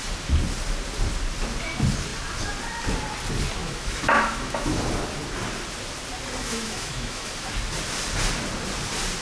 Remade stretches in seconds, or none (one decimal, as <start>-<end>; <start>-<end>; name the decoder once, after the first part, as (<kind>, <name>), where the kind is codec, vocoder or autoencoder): 3.6-4.8 (autoencoder, DAC-VAE); 6.4-7.3